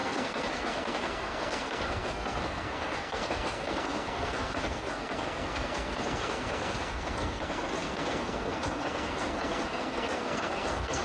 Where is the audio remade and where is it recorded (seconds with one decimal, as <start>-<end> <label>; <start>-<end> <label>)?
0.0-11.0 remade